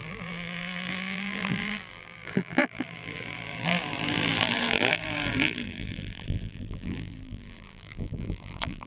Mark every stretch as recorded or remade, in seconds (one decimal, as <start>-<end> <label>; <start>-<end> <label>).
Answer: 0.0-8.9 remade